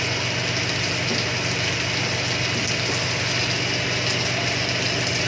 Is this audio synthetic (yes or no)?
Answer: no